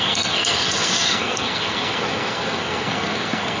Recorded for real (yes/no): no